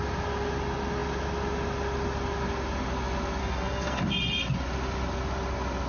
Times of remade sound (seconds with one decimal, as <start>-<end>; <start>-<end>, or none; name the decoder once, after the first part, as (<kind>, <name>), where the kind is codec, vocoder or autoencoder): 3.4-4.0 (codec, SNAC)